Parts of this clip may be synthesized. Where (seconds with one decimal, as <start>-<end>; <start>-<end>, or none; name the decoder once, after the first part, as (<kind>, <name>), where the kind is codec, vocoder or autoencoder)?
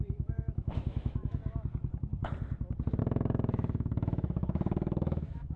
0.0-1.4 (autoencoder, DAC-VAE); 3.0-5.6